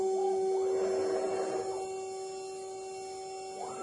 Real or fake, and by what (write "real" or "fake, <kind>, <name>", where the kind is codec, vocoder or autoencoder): real